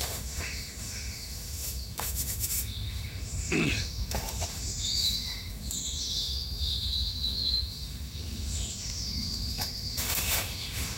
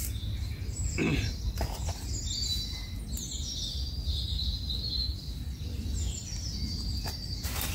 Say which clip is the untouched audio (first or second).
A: second